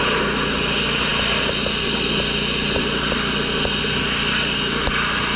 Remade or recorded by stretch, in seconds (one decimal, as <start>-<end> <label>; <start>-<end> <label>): 0.0-5.4 recorded